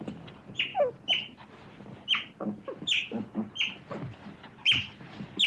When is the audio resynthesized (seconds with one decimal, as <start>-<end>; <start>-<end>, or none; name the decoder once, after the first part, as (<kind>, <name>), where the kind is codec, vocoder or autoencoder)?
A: none